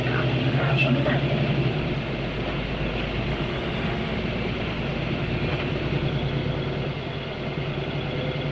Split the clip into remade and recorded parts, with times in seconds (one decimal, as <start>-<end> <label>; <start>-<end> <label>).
0.0-0.4 recorded; 0.4-1.1 remade; 1.1-3.3 recorded; 3.3-4.2 remade; 4.2-8.5 recorded